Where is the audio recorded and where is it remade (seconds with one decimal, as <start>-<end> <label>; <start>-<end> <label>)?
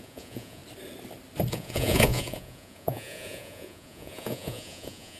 0.0-0.6 remade; 0.6-1.5 recorded; 1.5-5.2 remade